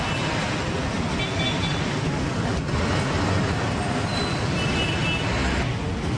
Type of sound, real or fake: real